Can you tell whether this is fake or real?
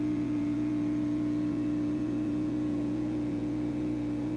fake